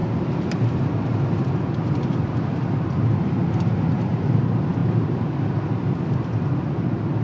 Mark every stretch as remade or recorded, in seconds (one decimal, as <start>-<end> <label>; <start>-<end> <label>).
0.0-4.3 remade; 4.3-4.8 recorded; 4.8-5.6 remade; 5.6-7.2 recorded